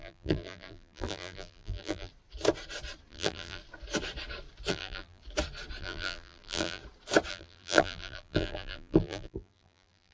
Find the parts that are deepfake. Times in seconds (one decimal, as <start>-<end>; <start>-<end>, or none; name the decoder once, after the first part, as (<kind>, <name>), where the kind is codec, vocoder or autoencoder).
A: 0.0-2.1 (vocoder, BigVGAN v2); 3.1-3.6; 4.7-5.2; 5.8-6.8; 7.3-10.1